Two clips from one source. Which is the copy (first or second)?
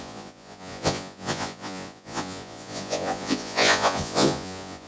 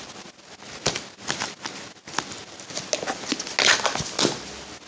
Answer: first